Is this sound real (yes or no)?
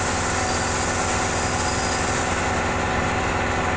yes